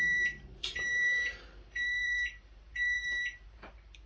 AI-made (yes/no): yes